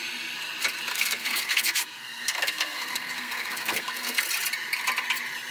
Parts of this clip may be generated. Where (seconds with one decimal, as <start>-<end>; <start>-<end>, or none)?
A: 0.9-4.2